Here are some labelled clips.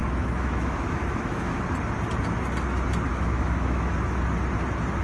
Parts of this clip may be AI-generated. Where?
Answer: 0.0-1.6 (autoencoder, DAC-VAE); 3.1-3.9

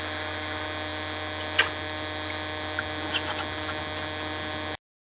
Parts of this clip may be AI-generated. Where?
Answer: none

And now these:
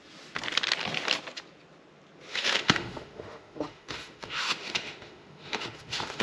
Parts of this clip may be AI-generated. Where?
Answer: 2.3-6.2 (autoencoder, DAC-VAE)

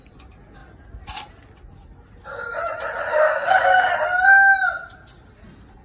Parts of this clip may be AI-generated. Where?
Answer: 3.1-3.9 (codec, DAC)